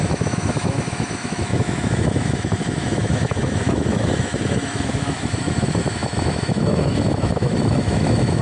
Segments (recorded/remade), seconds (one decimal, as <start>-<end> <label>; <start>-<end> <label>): 0.0-8.4 remade

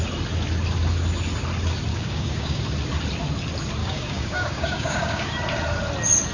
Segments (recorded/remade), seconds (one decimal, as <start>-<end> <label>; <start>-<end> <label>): 0.0-1.9 recorded; 1.9-2.6 remade; 2.6-3.8 recorded; 3.8-5.3 remade; 5.3-6.3 recorded

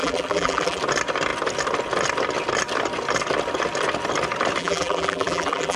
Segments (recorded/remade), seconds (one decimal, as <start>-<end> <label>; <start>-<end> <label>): 0.0-0.8 remade; 0.8-4.6 recorded; 4.6-5.8 remade

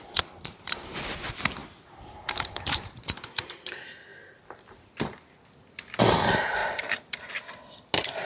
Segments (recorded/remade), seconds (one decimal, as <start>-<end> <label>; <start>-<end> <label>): 0.0-1.6 recorded; 1.6-3.6 remade; 3.6-6.6 recorded; 6.6-7.3 remade; 7.3-8.2 recorded

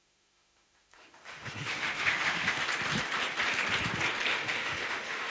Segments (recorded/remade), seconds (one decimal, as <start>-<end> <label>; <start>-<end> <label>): 0.0-2.6 remade; 2.6-4.3 recorded; 4.3-5.3 remade

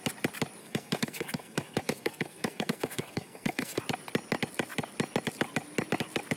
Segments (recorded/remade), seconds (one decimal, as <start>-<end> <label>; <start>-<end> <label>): 0.0-0.6 recorded; 0.6-3.8 remade; 3.8-6.4 recorded

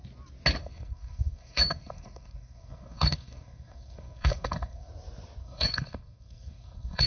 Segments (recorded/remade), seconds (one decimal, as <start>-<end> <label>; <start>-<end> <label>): 0.0-0.6 recorded; 0.6-4.9 remade; 4.9-5.4 recorded; 5.4-7.1 remade

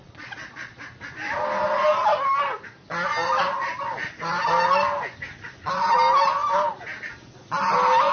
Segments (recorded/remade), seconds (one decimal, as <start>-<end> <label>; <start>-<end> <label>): 0.0-0.8 remade; 0.8-8.1 recorded